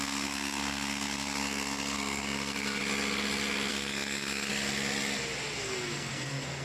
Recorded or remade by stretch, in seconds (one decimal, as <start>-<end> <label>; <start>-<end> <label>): 0.0-2.8 remade; 2.8-3.7 recorded; 3.7-4.5 remade; 4.5-5.6 recorded; 5.6-6.6 remade